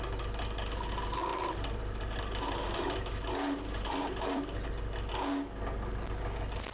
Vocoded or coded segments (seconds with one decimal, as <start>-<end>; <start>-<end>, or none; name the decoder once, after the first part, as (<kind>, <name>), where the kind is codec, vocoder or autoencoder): 1.3-4.7 (vocoder, BigVGAN v2)